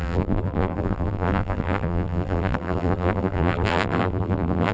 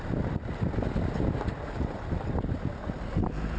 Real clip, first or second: second